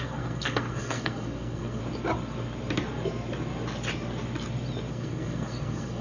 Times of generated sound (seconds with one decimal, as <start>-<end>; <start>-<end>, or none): 0.0-1.8; 4.9-6.0